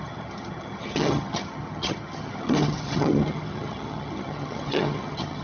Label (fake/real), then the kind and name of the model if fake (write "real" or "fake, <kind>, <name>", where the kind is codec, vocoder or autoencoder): fake, vocoder, HiFi-GAN